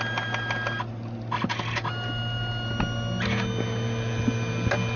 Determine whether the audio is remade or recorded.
recorded